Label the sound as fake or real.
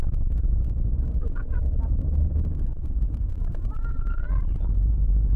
fake